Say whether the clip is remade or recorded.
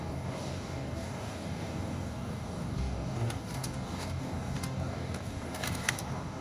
remade